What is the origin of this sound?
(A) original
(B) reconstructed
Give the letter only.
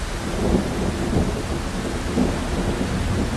A